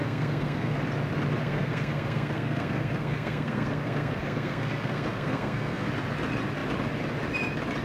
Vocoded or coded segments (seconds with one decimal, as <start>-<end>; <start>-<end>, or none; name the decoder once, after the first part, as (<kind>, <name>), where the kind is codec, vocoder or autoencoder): 0.0-0.8 (codec, SNAC); 1.4-5.9